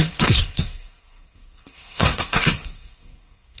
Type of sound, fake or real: fake